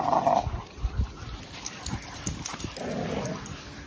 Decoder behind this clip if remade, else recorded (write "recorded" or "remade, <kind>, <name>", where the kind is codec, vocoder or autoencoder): recorded